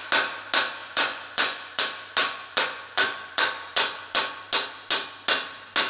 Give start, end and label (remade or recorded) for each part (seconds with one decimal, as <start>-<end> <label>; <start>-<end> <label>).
0.0-0.8 recorded; 0.8-1.8 remade; 1.8-2.2 recorded; 2.2-4.4 remade; 4.4-5.9 recorded